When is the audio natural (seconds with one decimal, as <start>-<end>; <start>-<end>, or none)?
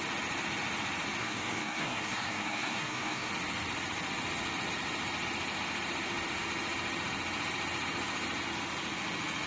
0.0-1.2; 3.3-9.5